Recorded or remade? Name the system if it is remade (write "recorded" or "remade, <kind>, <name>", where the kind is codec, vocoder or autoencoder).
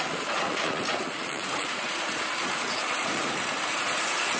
remade, vocoder, Vocos